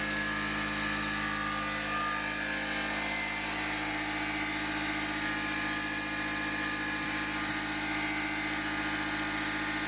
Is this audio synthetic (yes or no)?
no